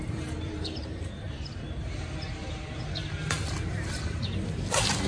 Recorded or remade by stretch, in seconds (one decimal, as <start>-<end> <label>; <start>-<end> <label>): 0.0-2.4 remade; 2.4-3.7 recorded; 3.7-4.2 remade; 4.2-5.1 recorded